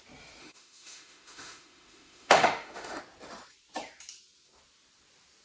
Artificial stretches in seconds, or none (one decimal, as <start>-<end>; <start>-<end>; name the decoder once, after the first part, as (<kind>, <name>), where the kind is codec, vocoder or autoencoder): 0.4-3.0 (autoencoder, DAC-VAE)